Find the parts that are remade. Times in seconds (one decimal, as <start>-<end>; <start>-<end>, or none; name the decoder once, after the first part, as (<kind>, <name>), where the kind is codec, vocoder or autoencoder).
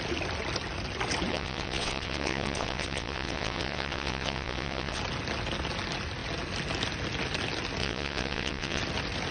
1.3-5.0 (vocoder, WaveNeXt); 7.8-8.8